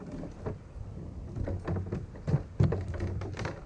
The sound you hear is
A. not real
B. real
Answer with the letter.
B